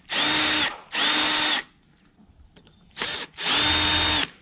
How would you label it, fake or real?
real